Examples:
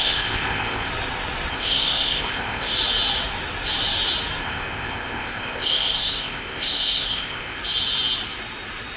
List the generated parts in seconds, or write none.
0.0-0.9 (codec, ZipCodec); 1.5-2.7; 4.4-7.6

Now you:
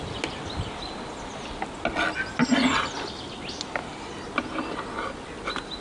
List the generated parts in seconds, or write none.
none